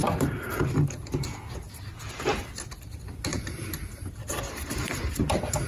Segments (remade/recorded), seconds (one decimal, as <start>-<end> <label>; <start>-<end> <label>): 0.0-0.6 remade; 0.6-3.3 recorded; 3.3-4.1 remade; 4.1-5.7 recorded